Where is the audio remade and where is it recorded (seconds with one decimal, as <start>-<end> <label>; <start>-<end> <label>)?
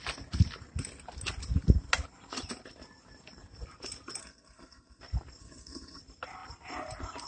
0.0-4.2 recorded; 4.2-5.0 remade; 5.0-5.4 recorded; 5.4-6.0 remade; 6.0-7.3 recorded